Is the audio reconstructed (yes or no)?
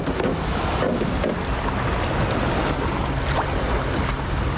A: no